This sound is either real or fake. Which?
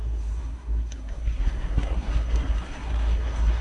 fake